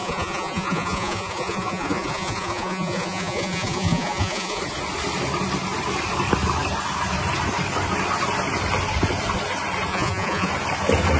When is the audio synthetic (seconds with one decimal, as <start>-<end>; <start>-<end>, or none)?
0.0-4.6; 9.9-10.5